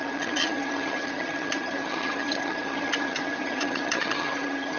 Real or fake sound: fake